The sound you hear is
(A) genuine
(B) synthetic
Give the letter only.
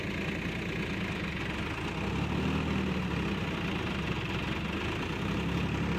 A